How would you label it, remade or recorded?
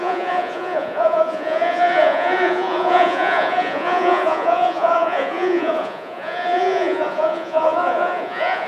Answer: remade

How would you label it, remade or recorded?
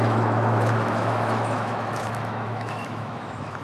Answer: remade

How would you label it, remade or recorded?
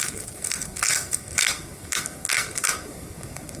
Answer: remade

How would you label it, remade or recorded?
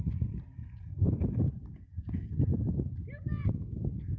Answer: recorded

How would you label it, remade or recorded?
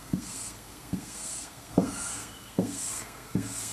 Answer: remade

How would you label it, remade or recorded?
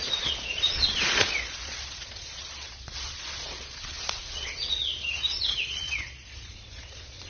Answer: remade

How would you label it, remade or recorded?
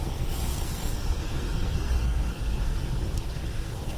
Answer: remade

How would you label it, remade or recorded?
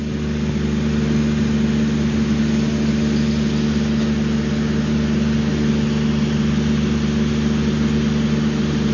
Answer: recorded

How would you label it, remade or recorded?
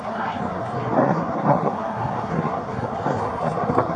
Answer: remade